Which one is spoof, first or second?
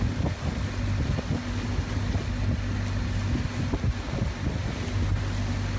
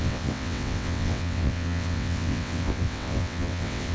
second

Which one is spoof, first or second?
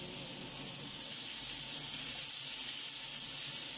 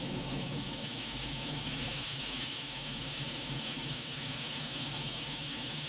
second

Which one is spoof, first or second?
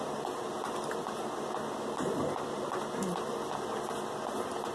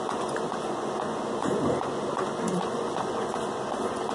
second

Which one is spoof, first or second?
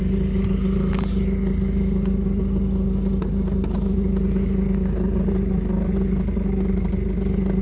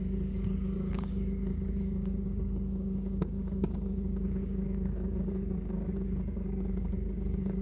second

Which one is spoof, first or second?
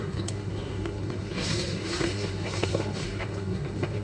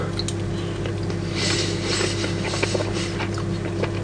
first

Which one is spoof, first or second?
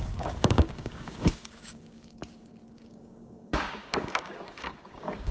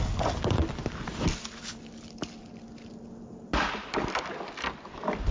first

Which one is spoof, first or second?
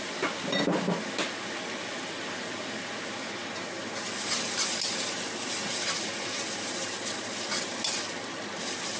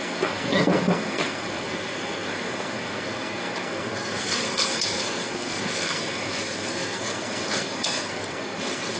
second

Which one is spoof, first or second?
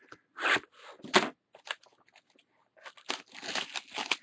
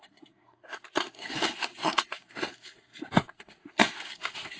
second